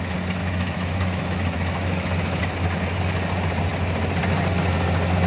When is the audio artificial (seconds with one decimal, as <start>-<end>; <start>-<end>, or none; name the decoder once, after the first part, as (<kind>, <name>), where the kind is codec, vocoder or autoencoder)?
0.4-2.4 (autoencoder, DAC-VAE)